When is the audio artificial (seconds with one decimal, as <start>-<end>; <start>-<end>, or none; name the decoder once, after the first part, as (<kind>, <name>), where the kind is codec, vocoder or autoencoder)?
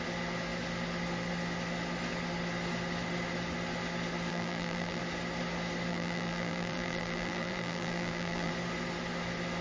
4.3-5.0 (vocoder, BigVGAN v2); 5.9-8.5